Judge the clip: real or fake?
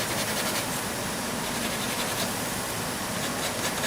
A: real